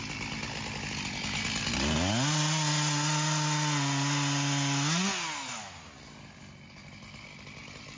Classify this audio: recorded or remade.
recorded